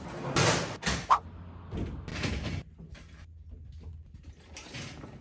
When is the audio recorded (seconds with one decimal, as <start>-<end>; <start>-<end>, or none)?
0.0-5.2